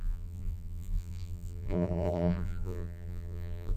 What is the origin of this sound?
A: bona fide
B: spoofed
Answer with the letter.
B